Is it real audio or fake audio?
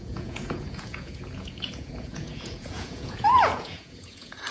fake